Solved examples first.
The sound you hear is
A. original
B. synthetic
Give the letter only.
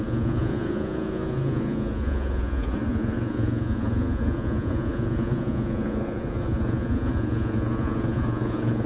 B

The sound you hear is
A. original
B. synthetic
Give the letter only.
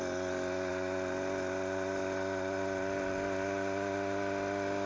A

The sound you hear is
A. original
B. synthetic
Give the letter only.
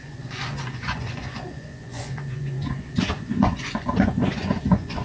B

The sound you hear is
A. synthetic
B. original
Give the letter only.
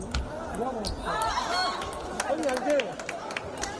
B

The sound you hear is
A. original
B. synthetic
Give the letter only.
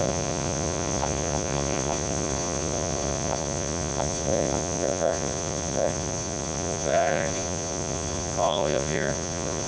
B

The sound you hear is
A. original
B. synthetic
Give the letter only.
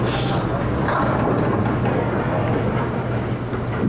A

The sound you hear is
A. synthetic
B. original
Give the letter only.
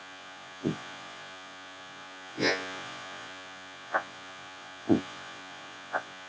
A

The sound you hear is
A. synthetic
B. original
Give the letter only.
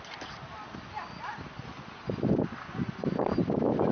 B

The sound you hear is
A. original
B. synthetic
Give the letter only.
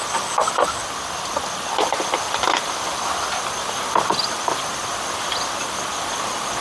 A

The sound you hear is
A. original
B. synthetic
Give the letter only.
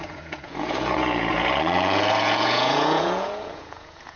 B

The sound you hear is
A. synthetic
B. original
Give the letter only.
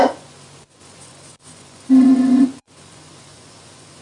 A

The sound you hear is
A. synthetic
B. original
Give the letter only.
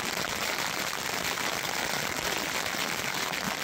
B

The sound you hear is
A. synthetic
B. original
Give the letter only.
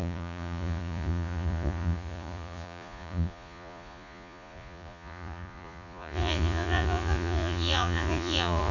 A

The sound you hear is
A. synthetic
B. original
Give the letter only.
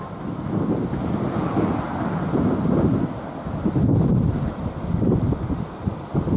B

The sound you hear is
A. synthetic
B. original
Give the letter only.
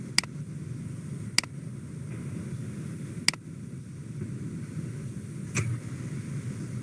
B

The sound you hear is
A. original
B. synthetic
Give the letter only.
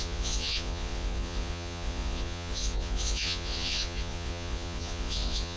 B